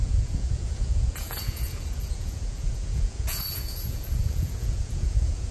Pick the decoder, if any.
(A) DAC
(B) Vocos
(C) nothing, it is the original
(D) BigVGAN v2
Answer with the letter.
B